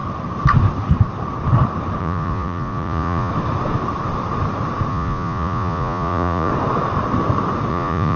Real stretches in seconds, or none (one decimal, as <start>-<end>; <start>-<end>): 0.0-2.0; 3.3-4.9; 6.5-7.7